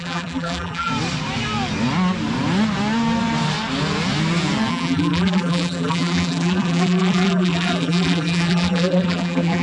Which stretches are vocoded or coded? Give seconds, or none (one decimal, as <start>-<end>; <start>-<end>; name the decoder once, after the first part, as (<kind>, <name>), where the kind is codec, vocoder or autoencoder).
0.0-0.9 (vocoder, BigVGAN v2); 4.7-9.6